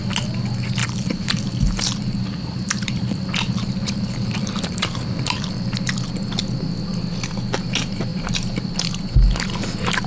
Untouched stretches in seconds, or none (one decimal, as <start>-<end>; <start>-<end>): 0.0-0.8; 5.5-8.1; 8.7-10.1